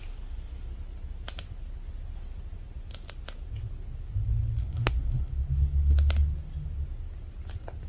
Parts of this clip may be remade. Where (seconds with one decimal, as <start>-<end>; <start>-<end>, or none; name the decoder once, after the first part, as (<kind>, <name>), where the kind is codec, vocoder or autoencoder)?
4.6-5.3 (codec, SNAC)